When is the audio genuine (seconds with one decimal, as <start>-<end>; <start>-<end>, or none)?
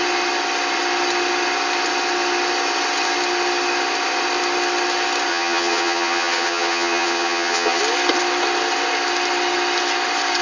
0.0-5.3; 7.8-10.4